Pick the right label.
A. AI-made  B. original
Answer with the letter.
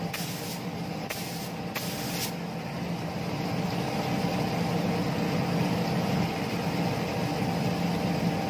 B